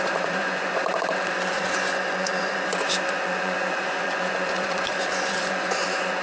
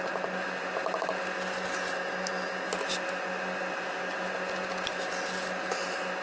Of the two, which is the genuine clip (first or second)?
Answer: second